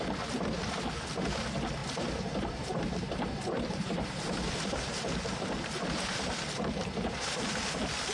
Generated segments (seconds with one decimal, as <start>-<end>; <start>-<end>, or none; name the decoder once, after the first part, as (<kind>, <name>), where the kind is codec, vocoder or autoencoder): 1.8-4.5 (vocoder, BigVGAN v2)